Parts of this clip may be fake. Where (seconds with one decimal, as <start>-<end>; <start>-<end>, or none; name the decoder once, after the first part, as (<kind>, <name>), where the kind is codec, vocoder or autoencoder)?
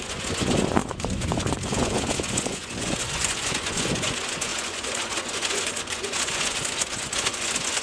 0.0-7.8 (vocoder, Vocos)